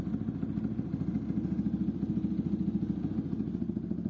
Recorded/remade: recorded